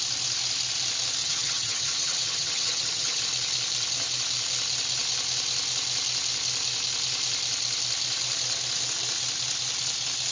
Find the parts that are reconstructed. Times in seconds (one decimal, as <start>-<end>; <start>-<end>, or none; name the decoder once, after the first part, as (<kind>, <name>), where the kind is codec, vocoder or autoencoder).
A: 1.2-3.2 (vocoder, HiFi-GAN)